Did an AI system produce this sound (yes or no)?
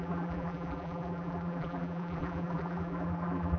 yes